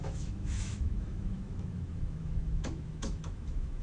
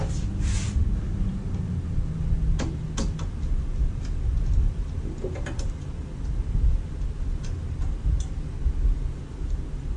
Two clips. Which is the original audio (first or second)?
second